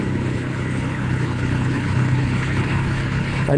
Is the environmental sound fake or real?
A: fake